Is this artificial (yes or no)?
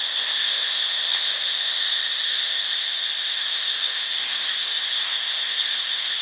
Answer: yes